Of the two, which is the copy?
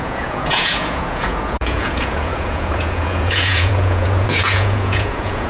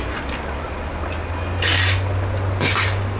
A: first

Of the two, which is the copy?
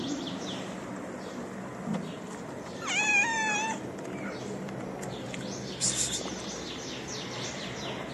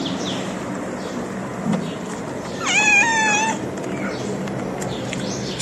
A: second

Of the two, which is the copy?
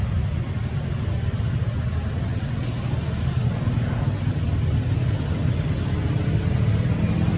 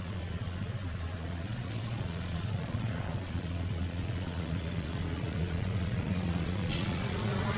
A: second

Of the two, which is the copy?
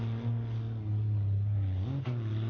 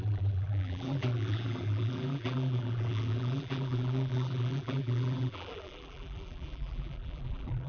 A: second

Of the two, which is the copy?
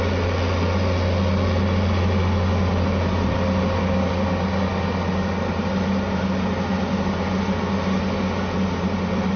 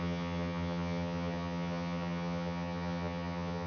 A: second